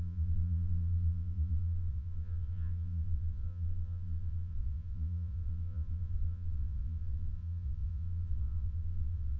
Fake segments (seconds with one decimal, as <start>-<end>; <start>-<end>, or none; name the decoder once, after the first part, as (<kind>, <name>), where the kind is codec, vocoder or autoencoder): 0.0-9.4 (vocoder, Vocos)